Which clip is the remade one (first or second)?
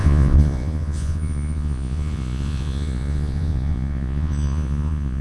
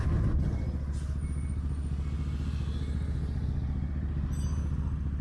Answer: first